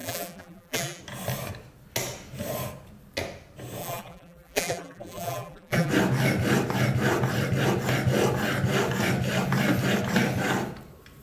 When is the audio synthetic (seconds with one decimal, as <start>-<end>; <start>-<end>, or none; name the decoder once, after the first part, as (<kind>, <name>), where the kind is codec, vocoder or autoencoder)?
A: 0.0-1.0 (vocoder, BigVGAN v2); 3.8-5.9